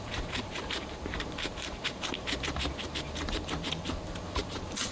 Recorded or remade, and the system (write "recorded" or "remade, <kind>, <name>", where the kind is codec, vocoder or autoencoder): remade, vocoder, BigVGAN v2